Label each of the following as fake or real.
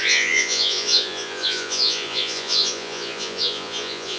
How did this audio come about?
fake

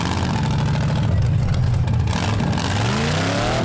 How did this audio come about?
real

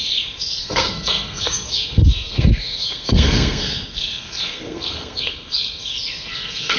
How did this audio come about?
fake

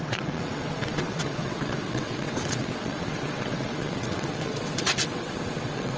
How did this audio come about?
fake